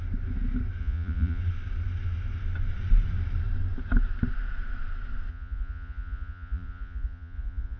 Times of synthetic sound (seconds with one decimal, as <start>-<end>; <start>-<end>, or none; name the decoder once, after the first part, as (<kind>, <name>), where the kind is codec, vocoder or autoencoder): 0.8-1.4 (vocoder, Vocos); 5.3-7.8